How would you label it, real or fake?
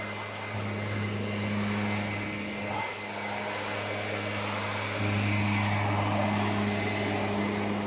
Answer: real